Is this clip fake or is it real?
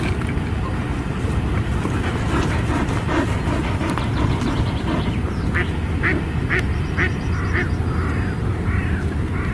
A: real